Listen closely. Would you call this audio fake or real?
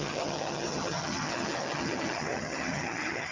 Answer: fake